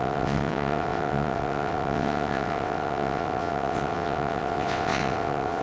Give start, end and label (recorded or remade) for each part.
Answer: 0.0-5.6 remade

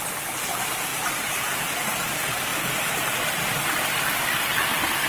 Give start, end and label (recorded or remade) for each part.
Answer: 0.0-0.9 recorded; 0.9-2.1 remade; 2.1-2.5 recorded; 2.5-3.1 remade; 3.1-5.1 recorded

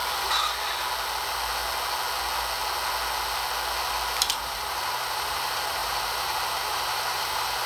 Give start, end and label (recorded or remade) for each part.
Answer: 0.0-4.4 recorded; 4.4-7.7 remade

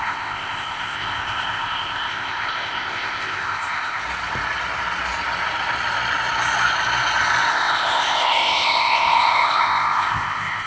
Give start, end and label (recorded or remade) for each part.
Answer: 0.0-4.0 remade; 4.0-7.5 recorded; 7.5-10.7 remade